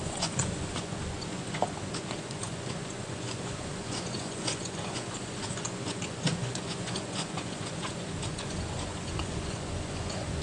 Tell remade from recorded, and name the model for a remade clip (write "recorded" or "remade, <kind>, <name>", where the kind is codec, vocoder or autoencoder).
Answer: remade, vocoder, Vocos